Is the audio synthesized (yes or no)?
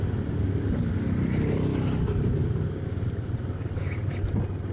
no